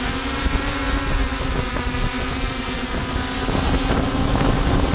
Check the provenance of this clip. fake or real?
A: real